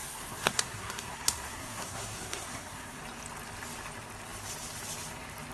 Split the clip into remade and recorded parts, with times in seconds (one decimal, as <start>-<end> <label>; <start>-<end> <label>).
0.0-3.0 remade; 3.0-5.5 recorded

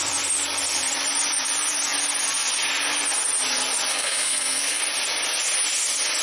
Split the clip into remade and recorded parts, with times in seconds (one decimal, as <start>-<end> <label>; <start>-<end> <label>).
0.0-3.9 recorded; 3.9-4.8 remade; 4.8-6.2 recorded

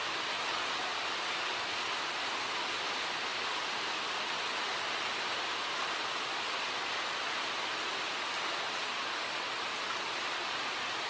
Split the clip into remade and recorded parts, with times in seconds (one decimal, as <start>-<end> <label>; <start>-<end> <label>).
0.0-11.1 recorded